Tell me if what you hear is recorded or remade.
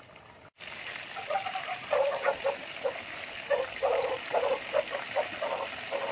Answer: recorded